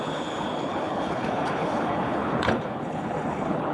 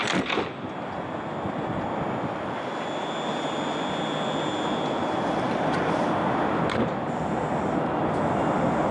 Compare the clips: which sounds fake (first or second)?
first